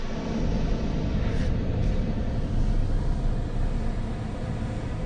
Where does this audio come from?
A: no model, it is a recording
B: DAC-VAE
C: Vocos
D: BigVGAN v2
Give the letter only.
A